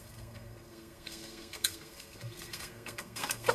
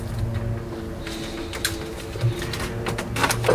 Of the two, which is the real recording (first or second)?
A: second